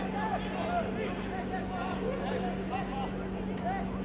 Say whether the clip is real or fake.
real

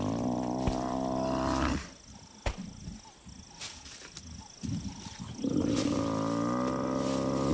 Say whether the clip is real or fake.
real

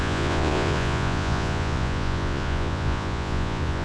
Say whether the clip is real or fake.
fake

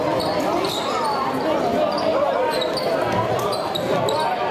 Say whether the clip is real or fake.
real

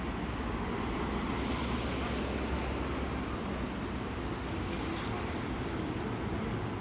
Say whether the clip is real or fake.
real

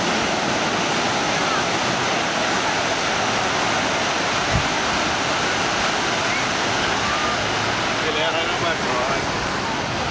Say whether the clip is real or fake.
real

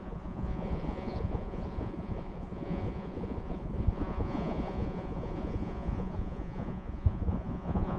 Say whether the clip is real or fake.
fake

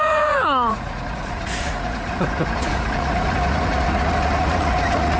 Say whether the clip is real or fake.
fake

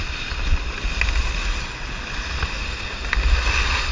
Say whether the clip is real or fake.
real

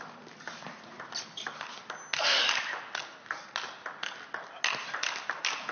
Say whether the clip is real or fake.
real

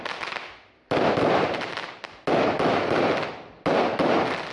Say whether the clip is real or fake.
real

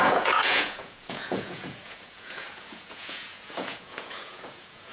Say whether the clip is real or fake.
fake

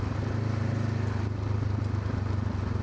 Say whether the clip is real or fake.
real